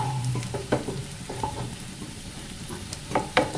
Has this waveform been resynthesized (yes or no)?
yes